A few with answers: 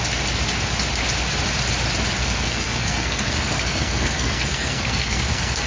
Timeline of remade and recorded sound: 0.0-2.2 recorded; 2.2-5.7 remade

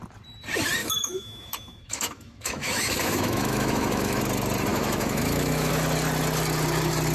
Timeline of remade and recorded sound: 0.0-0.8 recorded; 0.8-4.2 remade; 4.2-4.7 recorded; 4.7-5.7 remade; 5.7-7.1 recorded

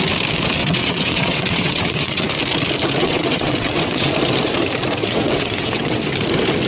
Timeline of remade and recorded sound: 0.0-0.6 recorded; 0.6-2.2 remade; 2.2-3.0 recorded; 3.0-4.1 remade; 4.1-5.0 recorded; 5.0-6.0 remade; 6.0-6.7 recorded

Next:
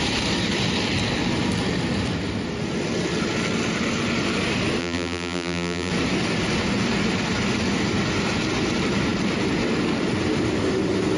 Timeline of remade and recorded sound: 0.0-4.8 recorded; 4.8-5.9 remade; 5.9-11.2 recorded

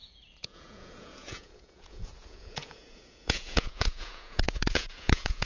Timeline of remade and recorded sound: 0.0-5.5 remade

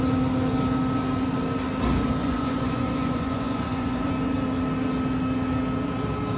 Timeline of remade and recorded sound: 0.0-2.2 recorded; 2.2-4.1 remade; 4.1-6.4 recorded

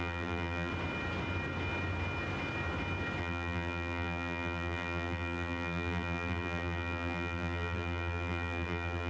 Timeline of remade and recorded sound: 0.0-0.7 remade; 0.7-3.2 recorded; 3.2-9.1 remade